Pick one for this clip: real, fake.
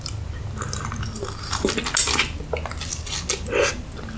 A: real